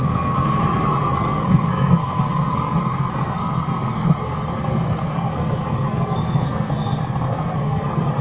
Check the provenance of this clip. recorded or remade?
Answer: remade